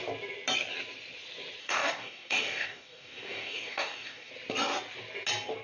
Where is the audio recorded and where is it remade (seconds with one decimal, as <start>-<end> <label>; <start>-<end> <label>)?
0.0-1.6 recorded; 1.6-4.3 remade; 4.3-5.6 recorded